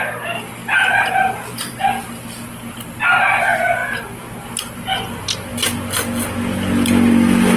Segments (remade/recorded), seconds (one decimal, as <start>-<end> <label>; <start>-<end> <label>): 0.0-0.6 recorded; 0.6-1.9 remade; 1.9-7.6 recorded